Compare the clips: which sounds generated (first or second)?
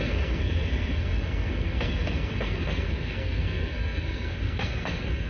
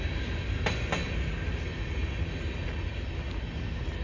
first